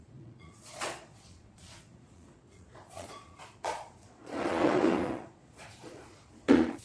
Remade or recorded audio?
remade